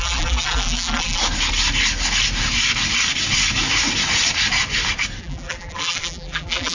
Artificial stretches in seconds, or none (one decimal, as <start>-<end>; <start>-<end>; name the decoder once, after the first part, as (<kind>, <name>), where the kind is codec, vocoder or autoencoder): 0.0-1.2 (vocoder, BigVGAN v2); 5.2-6.7